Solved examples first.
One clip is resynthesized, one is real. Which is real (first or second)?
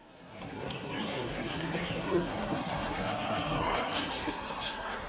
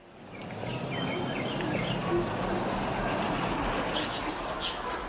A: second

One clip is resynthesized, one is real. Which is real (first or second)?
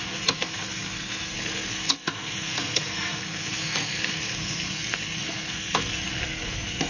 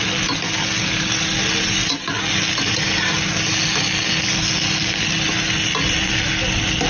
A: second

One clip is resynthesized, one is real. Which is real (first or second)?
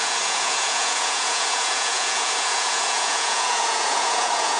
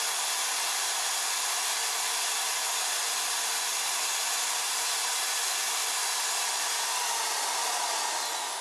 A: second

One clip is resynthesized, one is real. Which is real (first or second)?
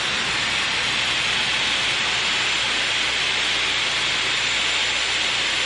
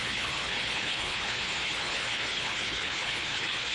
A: first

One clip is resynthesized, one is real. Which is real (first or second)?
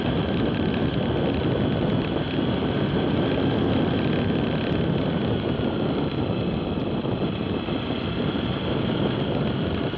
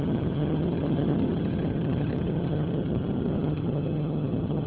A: first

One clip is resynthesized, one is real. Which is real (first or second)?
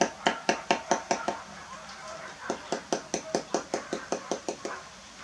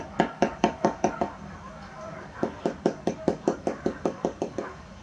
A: first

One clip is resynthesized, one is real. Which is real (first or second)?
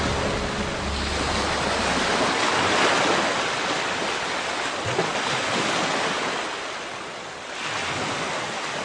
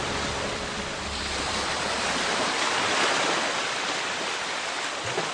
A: first